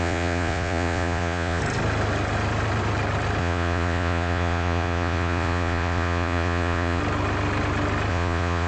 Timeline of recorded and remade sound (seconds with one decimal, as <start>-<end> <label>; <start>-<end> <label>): 0.0-1.6 remade; 1.6-3.4 recorded; 3.4-7.0 remade; 7.0-8.1 recorded; 8.1-8.7 remade